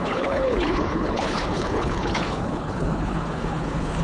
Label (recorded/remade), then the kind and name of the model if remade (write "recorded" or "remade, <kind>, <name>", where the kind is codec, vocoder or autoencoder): remade, codec, HILCodec